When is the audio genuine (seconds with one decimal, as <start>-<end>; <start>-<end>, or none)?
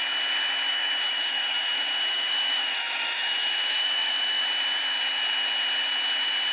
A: 0.0-0.7; 4.4-6.5